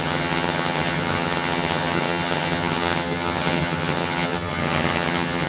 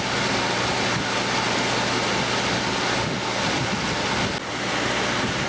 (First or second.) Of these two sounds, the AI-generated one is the first